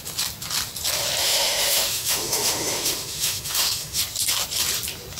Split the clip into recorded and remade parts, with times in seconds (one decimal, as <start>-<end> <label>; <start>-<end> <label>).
0.0-1.2 recorded; 1.2-4.0 remade; 4.0-5.2 recorded